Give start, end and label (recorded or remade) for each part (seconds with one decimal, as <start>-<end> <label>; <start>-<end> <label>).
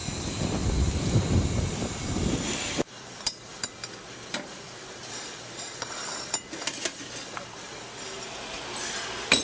0.0-9.4 remade